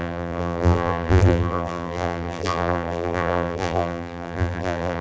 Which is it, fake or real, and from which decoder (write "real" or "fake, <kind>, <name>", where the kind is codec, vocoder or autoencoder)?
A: fake, vocoder, BigVGAN v2